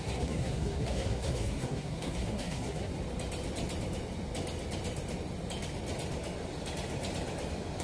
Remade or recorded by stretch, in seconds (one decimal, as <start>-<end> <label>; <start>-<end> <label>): 0.0-2.9 remade; 2.9-7.8 recorded